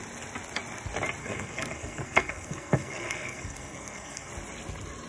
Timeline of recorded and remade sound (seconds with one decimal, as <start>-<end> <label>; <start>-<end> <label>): 0.0-1.2 recorded; 1.2-4.3 remade; 4.3-5.1 recorded